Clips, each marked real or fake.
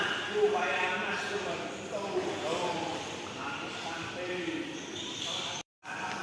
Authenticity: fake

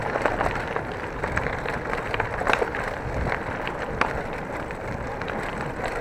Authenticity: fake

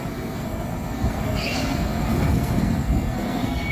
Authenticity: fake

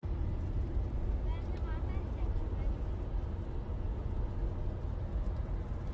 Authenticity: real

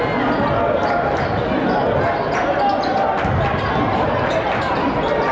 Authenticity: real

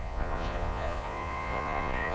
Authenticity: fake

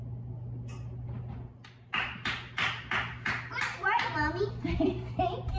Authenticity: real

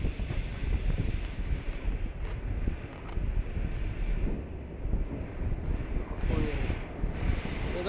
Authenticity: real